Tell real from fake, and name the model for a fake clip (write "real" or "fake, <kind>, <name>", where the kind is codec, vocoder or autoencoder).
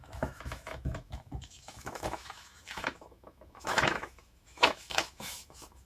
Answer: fake, autoencoder, DAC-VAE